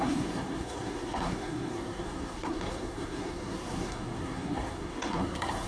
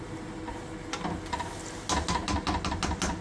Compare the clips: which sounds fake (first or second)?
first